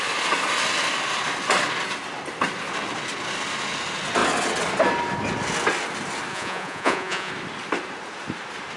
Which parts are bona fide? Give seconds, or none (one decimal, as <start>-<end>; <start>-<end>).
0.0-6.3; 7.3-8.8